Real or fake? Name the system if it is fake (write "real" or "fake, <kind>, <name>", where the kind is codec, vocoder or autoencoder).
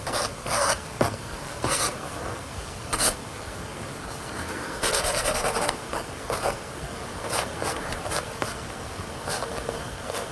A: fake, codec, SNAC